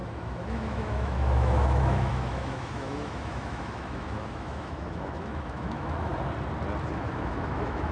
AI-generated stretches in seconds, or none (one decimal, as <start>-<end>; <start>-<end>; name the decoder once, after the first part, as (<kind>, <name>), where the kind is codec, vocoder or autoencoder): 0.0-6.1 (autoencoder, DAC-VAE); 6.9-7.9